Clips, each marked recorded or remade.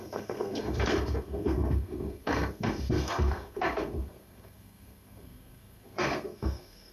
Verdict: remade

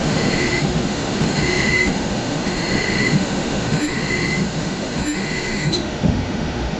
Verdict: remade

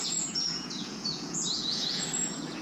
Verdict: remade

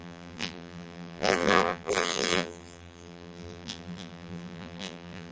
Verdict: remade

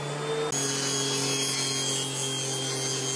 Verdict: recorded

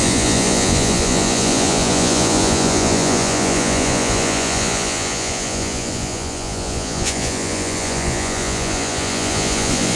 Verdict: remade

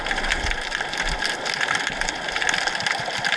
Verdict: recorded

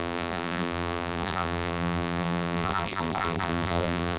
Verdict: remade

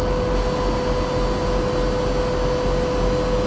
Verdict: recorded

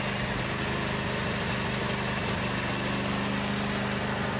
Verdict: recorded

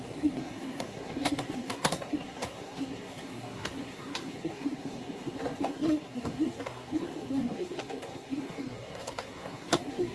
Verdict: remade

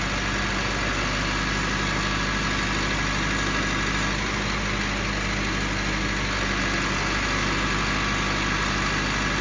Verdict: recorded